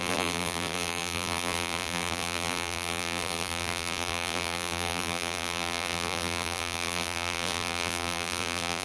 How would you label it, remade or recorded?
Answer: remade